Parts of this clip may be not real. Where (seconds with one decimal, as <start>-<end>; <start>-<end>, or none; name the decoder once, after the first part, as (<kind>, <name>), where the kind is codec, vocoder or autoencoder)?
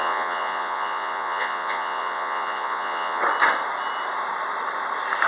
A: 0.0-3.2 (vocoder, Vocos)